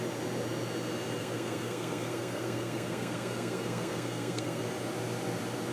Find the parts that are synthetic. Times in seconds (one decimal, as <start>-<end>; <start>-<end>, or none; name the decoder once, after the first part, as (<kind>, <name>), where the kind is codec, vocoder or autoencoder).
1.2-4.6 (codec, SNAC)